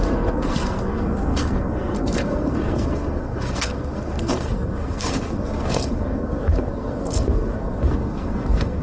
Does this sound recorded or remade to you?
remade